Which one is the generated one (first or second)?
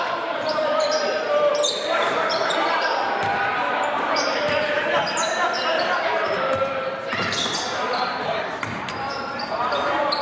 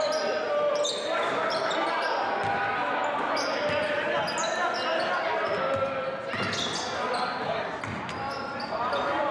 first